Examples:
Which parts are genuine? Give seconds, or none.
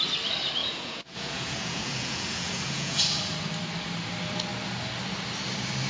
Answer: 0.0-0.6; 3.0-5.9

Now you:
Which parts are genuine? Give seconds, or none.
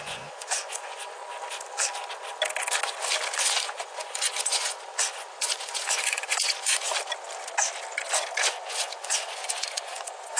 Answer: 1.2-3.4; 6.9-8.4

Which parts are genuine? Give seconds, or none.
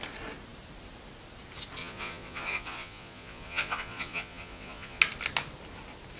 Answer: 0.0-1.8; 5.0-6.2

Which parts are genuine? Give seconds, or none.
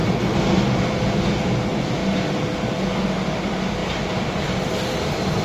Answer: 0.0-3.8; 4.3-5.4